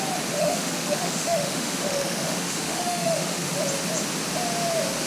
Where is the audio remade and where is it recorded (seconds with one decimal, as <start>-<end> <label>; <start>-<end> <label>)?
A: 0.0-0.4 recorded; 0.4-3.5 remade; 3.5-5.1 recorded